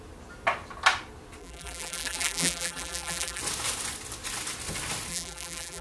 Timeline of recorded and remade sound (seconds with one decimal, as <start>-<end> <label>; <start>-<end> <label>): 0.0-1.4 recorded; 1.4-3.4 remade; 3.4-5.1 recorded; 5.1-5.8 remade